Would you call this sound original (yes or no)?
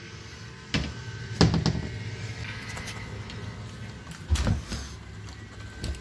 yes